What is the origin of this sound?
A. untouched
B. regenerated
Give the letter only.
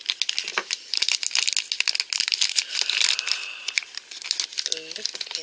A